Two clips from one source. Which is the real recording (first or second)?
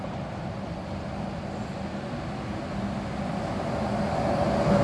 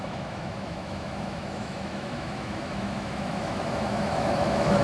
first